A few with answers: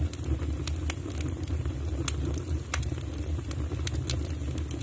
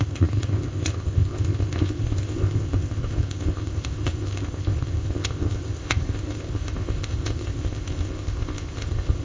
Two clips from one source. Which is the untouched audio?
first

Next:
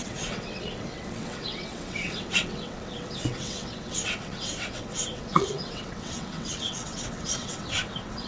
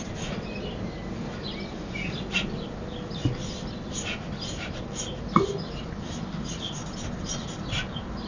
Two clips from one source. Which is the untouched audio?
second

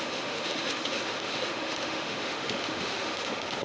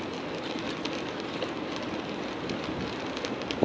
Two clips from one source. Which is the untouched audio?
second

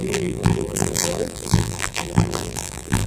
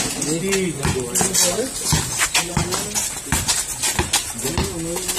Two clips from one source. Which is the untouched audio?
second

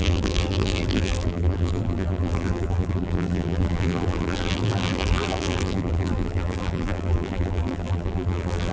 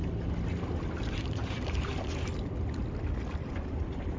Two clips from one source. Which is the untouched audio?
second